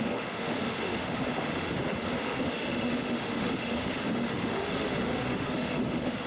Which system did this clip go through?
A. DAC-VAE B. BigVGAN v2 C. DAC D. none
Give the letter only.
A